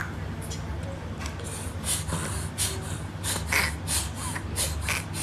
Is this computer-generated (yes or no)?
no